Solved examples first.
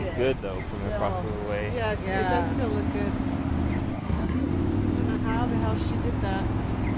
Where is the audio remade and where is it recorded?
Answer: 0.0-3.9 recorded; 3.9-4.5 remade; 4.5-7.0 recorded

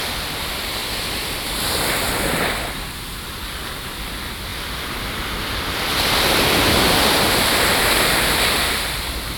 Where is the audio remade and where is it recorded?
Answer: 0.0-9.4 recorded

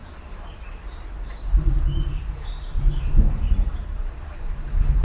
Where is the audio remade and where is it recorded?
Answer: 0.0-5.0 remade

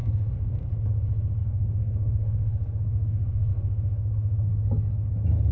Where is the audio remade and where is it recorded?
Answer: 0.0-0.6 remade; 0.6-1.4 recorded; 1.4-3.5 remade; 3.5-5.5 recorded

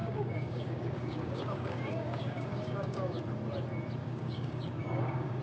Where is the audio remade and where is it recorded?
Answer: 0.0-3.2 remade; 3.2-4.0 recorded; 4.0-5.4 remade